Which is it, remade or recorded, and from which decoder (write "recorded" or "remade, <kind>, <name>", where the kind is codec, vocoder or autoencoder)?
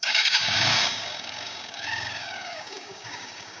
remade, codec, DAC